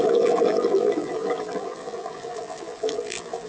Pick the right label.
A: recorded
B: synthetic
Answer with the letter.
B